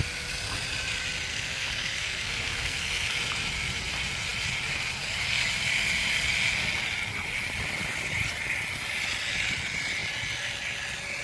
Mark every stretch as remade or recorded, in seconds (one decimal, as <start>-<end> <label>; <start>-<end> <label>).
0.0-1.3 recorded; 1.3-3.2 remade; 3.2-11.2 recorded